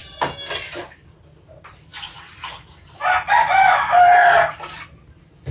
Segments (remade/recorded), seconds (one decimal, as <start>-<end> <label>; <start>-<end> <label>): 0.0-5.5 recorded